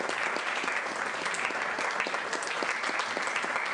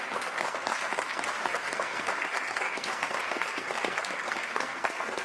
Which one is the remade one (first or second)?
second